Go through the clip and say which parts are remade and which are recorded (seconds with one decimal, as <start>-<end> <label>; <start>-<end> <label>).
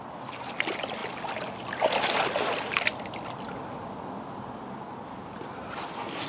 0.0-6.3 recorded